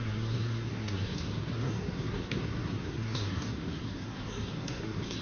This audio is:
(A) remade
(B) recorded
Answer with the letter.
A